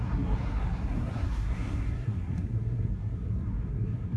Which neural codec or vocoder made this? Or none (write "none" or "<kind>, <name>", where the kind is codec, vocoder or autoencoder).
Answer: codec, SNAC